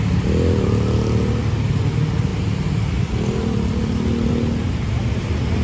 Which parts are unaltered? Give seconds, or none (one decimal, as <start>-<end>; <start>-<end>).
0.0-5.6